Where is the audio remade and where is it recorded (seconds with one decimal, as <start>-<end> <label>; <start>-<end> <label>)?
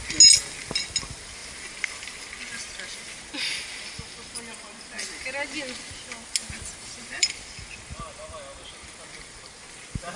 0.0-6.4 recorded; 6.4-7.3 remade; 7.3-10.2 recorded